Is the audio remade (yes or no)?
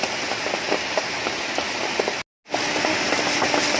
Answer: no